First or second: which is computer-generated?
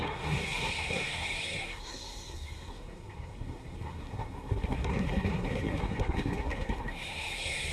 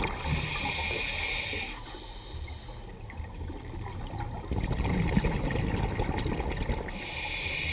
first